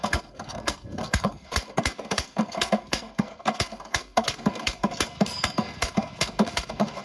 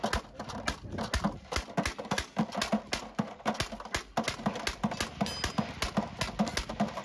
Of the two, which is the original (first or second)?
second